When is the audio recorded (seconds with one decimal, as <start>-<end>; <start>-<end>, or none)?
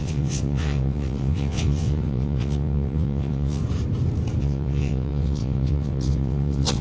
3.6-4.4